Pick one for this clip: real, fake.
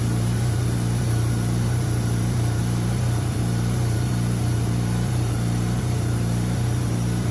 fake